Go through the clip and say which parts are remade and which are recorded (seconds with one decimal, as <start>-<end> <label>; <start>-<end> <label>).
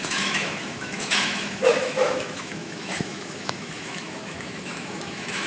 0.0-5.5 remade